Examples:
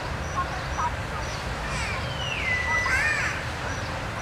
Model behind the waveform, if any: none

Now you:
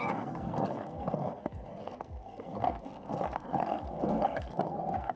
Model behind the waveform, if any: codec, SNAC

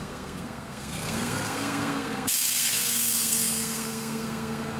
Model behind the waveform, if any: codec, SNAC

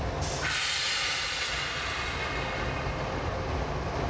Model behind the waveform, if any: none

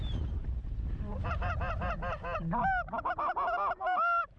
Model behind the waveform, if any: none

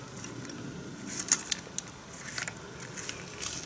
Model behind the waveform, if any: none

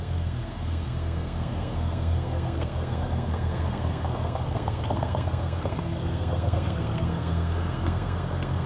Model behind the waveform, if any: codec, SNAC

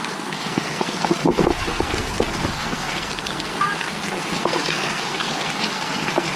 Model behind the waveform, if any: codec, SNAC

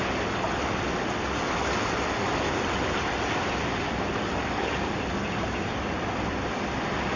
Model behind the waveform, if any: none